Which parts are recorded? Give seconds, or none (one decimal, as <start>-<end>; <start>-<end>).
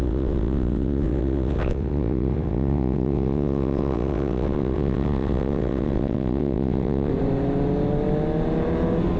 7.1-9.2